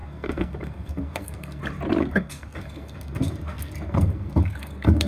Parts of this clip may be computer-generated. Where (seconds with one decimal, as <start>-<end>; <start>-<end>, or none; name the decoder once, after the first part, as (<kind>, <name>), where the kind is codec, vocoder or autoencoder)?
0.0-1.6 (codec, SNAC); 2.0-5.1